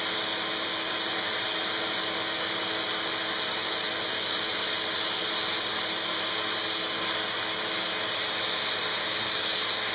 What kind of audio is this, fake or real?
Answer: real